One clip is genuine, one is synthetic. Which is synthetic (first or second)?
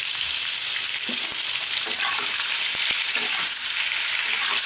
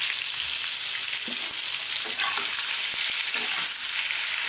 first